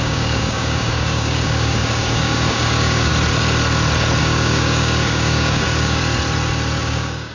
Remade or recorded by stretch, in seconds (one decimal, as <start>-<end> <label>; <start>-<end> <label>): 0.0-3.1 remade; 3.1-4.2 recorded; 4.2-6.0 remade; 6.0-6.8 recorded; 6.8-7.3 remade